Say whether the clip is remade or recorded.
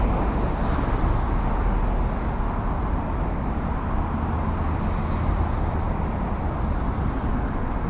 recorded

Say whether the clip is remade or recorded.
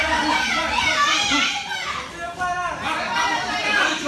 recorded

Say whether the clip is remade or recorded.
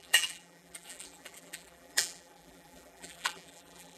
remade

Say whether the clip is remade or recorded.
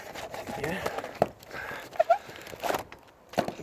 remade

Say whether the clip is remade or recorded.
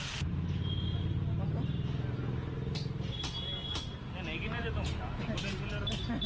recorded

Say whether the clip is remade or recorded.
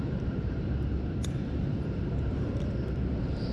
remade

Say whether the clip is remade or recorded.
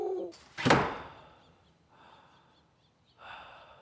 recorded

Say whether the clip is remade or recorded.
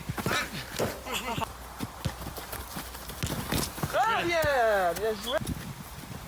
recorded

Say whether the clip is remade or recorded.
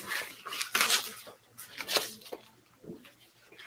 recorded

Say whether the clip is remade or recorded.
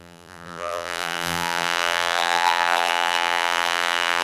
remade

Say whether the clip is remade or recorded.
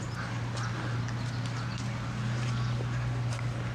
recorded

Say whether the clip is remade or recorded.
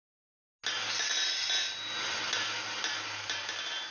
recorded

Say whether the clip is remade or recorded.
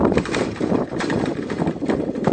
remade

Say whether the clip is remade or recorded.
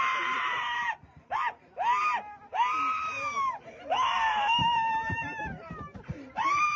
remade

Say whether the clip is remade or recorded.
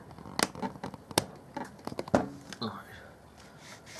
recorded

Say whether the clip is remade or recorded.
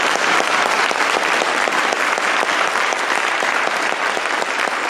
recorded